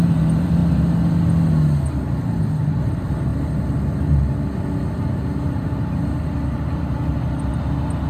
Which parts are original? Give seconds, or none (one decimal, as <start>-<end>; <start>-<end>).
0.6-2.6; 3.3-5.2; 7.5-8.1